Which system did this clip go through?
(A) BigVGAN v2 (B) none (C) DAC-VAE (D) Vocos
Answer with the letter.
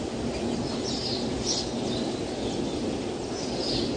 B